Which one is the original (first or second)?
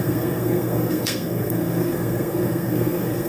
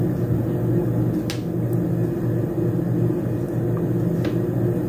second